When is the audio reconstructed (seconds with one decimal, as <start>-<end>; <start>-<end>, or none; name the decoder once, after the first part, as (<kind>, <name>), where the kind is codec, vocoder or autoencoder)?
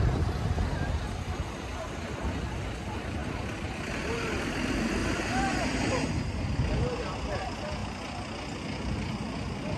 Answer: 5.0-6.2 (vocoder, BigVGAN v2)